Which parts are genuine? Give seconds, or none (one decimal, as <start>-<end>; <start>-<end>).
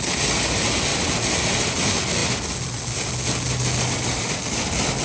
0.0-5.0